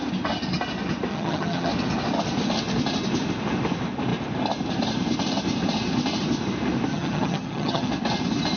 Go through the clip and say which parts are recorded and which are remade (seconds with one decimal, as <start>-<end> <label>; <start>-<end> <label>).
0.0-1.1 recorded; 1.1-1.7 remade; 1.7-6.9 recorded; 6.9-7.9 remade; 7.9-8.6 recorded